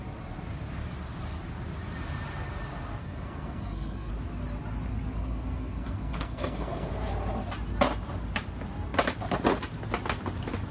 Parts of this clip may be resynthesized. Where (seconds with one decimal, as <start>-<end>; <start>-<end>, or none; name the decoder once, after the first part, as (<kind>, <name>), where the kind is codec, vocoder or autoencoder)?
3.0-4.1 (codec, SNAC); 4.9-6.9